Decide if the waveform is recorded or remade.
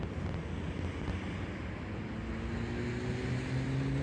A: recorded